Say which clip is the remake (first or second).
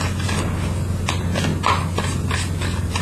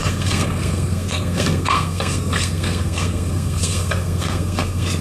second